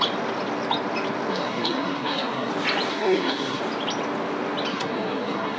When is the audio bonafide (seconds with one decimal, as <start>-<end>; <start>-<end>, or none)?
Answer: 0.0-1.3; 2.5-2.9; 3.6-4.7